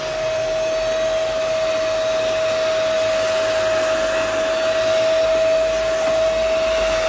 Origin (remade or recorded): recorded